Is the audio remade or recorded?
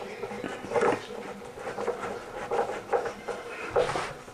recorded